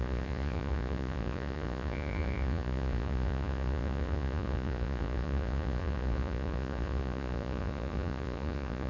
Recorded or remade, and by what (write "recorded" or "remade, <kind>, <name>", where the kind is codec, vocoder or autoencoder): remade, vocoder, Vocos